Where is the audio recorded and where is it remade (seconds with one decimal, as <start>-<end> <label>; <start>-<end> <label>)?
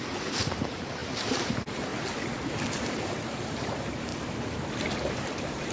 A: 0.0-1.9 remade; 1.9-2.7 recorded; 2.7-4.1 remade; 4.1-5.1 recorded; 5.1-5.7 remade